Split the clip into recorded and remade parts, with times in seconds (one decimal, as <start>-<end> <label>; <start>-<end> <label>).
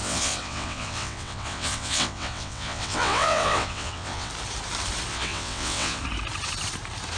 0.0-4.3 remade; 4.3-5.1 recorded; 5.1-6.0 remade; 6.0-7.2 recorded